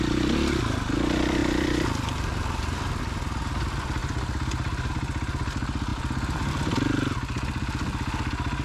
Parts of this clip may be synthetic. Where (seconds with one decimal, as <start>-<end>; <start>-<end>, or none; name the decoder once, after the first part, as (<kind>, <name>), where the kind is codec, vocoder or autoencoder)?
1.4-3.0 (vocoder, BigVGAN v2); 4.0-4.9; 5.9-6.5